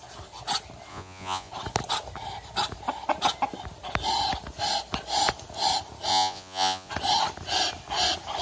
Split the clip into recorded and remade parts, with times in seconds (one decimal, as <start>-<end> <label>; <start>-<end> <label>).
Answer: 0.0-0.9 recorded; 0.9-1.5 remade; 1.5-6.1 recorded; 6.1-6.9 remade; 6.9-8.4 recorded